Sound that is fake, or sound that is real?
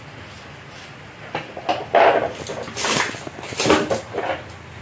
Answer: real